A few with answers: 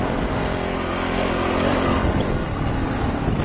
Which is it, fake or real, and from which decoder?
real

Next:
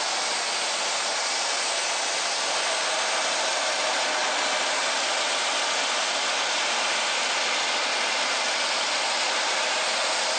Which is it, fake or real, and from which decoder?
real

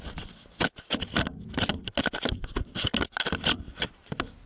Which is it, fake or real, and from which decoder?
real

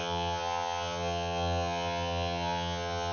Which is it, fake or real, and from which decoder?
fake, vocoder, HiFi-GAN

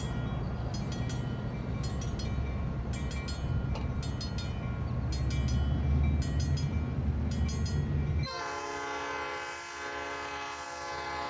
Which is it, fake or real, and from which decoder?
real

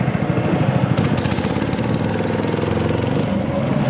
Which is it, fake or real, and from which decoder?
real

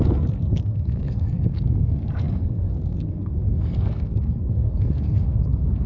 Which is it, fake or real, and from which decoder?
fake, codec, SNAC